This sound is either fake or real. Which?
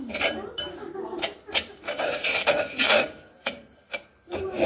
fake